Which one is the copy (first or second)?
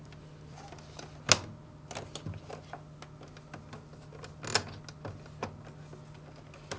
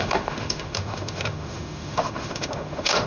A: second